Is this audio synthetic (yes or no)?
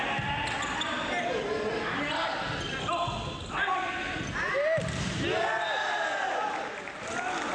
no